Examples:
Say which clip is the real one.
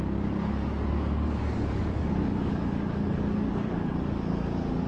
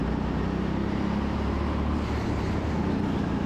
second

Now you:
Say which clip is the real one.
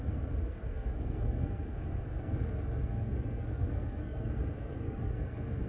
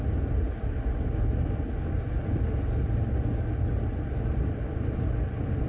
second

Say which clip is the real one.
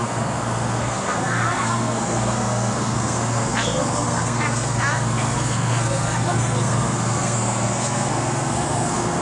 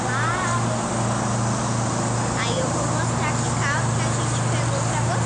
second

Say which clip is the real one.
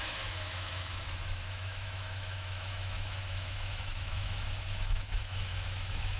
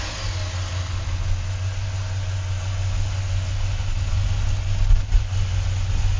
second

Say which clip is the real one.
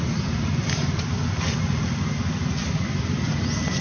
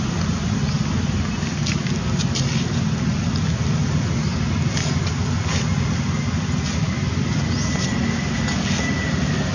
second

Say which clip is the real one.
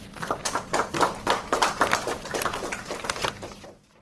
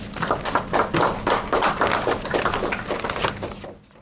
second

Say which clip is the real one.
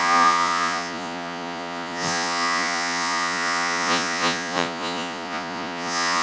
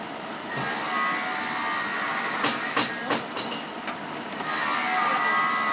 second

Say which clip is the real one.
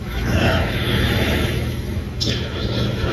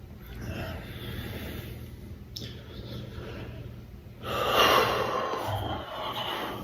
second